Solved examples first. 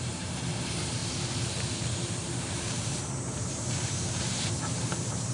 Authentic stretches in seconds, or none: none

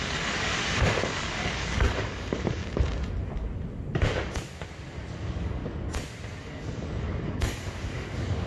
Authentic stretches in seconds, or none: 2.6-5.1; 5.6-6.4

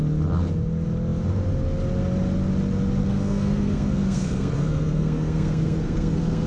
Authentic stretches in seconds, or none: 0.0-3.0

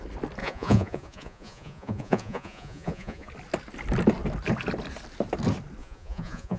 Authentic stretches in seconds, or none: 0.0-0.4; 3.3-5.8

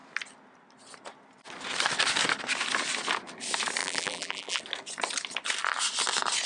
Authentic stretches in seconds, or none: 0.0-3.8; 4.6-6.5

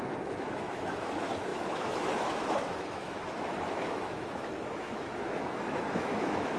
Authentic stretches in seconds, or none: none

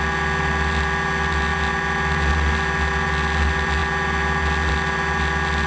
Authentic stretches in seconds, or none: 0.0-5.7

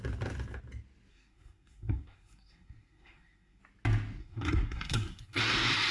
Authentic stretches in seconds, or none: 0.0-1.1; 3.6-4.2; 5.4-5.9